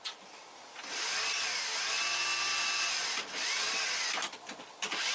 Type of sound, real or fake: real